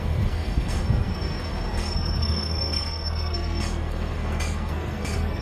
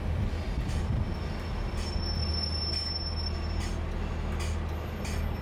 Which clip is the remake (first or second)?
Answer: first